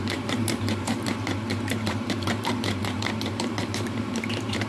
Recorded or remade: remade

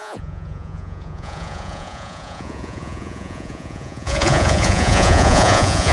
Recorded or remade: remade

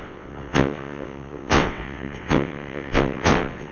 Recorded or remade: remade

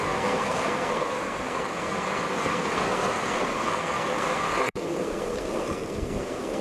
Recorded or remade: remade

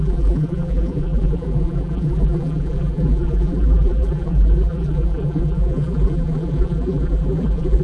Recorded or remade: remade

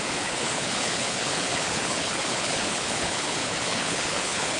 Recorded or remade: remade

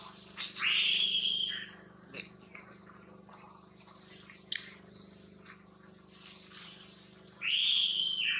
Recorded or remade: recorded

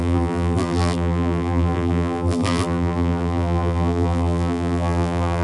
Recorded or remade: remade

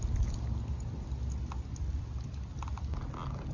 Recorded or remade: recorded